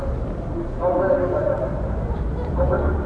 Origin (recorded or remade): recorded